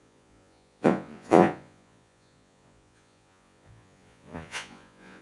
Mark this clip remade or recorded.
remade